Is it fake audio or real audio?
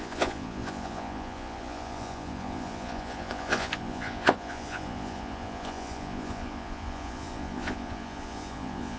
fake